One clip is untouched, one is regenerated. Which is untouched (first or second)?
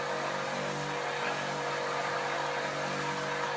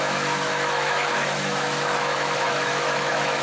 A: first